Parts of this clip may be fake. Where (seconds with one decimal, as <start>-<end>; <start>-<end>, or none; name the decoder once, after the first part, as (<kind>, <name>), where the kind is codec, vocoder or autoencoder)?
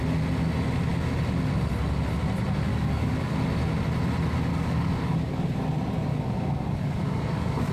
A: 2.7-3.3 (codec, DAC); 4.5-5.4; 6.1-7.7